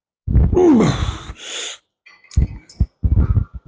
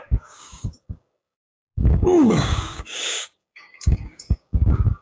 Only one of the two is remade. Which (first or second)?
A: second